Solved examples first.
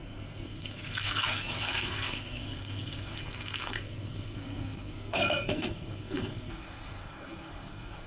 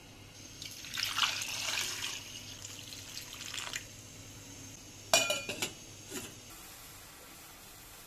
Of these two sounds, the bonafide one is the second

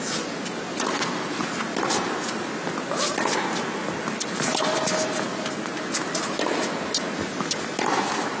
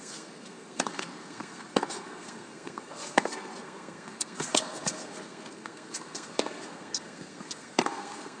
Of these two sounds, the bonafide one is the first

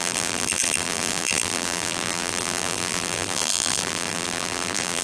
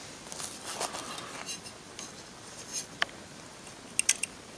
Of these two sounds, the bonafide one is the second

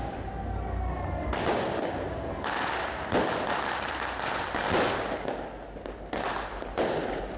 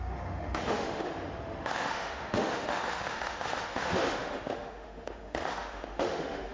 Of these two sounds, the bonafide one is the first